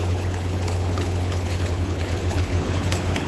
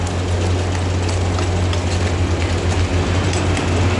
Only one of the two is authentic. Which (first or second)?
second